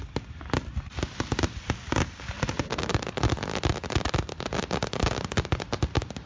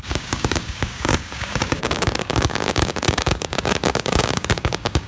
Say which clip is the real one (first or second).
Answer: first